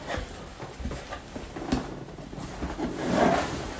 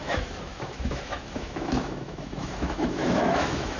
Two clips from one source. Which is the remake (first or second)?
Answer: second